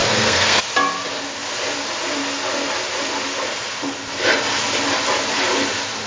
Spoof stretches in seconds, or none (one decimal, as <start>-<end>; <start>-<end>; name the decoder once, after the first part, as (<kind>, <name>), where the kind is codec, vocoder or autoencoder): 0.0-0.6 (codec, SNAC)